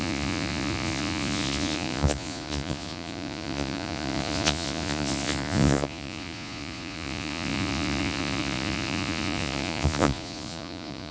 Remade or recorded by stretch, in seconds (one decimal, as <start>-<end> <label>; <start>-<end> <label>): 0.0-11.1 remade